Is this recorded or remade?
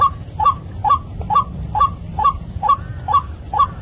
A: recorded